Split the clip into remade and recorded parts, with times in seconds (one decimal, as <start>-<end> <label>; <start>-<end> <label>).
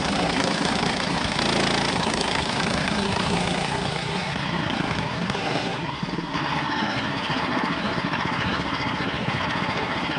0.0-1.4 remade; 1.4-1.9 recorded; 1.9-10.2 remade